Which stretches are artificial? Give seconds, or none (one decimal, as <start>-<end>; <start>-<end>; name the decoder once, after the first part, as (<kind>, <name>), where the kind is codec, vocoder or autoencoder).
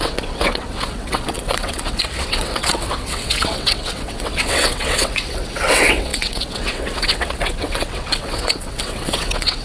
0.0-9.6 (vocoder, WaveNeXt)